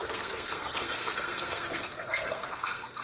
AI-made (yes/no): yes